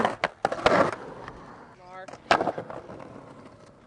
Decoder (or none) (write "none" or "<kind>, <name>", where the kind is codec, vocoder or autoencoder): none